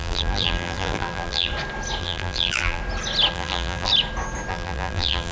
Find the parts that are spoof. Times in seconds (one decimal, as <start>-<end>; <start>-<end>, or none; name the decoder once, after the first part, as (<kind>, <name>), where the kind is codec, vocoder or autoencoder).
0.0-1.5 (vocoder, BigVGAN v2); 2.0-2.8; 3.3-3.9; 4.5-5.3